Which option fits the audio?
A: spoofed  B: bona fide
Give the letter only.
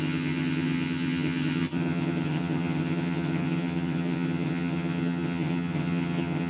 A